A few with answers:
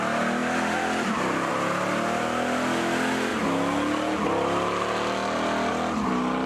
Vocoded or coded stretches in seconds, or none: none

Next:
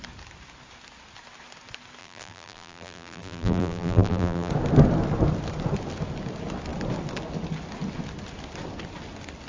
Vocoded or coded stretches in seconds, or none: 2.0-4.5 (vocoder, BigVGAN v2)

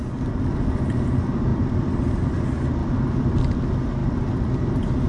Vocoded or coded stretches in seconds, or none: 1.5-2.4 (vocoder, BigVGAN v2); 4.0-4.6

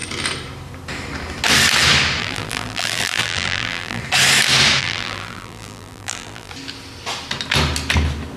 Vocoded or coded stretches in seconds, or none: 2.2-4.0 (vocoder, BigVGAN v2); 4.8-6.5

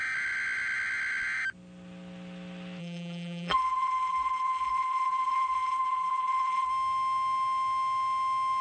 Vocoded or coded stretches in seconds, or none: 2.8-6.7 (vocoder, BigVGAN v2)

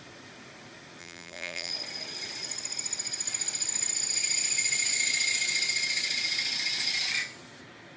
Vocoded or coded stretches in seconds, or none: 1.0-1.7 (vocoder, BigVGAN v2)

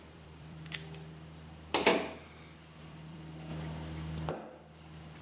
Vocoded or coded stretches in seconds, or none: 0.0-1.9 (vocoder, BigVGAN v2); 2.8-3.5; 4.3-5.2

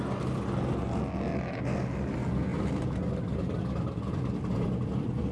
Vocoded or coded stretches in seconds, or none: 2.5-5.3 (vocoder, BigVGAN v2)